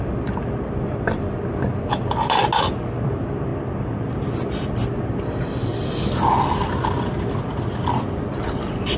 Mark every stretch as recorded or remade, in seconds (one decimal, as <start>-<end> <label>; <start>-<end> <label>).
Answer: 0.0-2.4 remade; 2.4-3.1 recorded; 3.1-3.5 remade; 3.5-4.7 recorded; 4.7-5.7 remade; 5.7-9.0 recorded